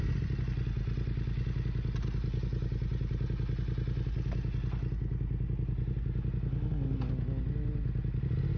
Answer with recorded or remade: recorded